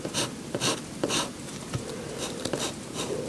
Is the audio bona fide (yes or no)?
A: yes